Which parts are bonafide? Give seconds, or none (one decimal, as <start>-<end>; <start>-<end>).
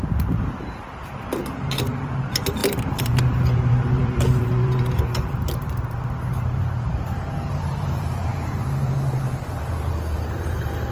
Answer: none